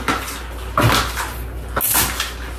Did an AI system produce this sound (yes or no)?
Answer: no